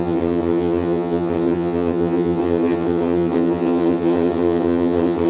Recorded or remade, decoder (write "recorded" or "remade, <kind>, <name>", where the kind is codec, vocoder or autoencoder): remade, vocoder, HiFi-GAN